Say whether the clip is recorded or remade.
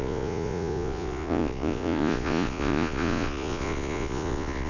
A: remade